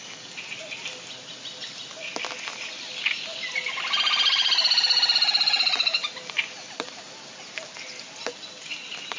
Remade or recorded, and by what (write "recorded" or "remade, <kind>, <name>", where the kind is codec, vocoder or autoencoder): recorded